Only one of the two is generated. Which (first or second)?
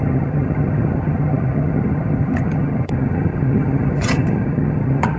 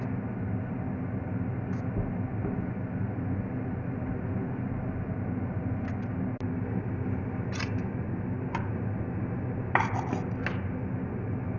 first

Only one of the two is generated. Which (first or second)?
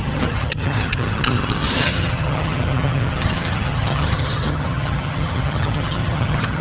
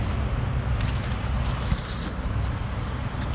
first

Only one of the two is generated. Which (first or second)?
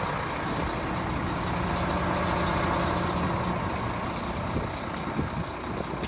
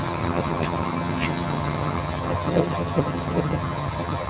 second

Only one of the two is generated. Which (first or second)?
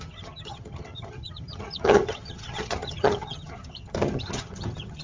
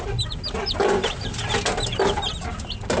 first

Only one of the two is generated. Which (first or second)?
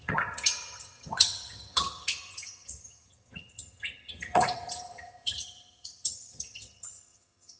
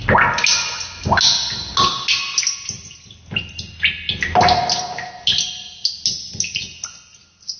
first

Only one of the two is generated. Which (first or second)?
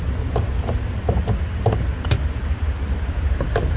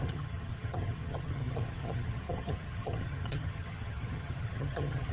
second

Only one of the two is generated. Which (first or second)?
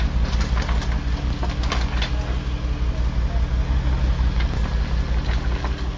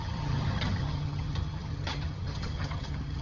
second